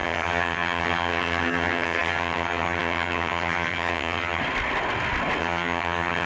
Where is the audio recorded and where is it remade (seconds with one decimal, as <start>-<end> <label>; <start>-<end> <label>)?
0.0-4.4 remade; 4.4-5.4 recorded; 5.4-6.3 remade